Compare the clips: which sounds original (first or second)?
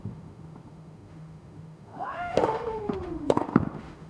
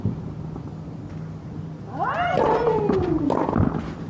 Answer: second